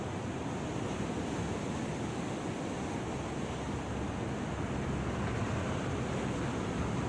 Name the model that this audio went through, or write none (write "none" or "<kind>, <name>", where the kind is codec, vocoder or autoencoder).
none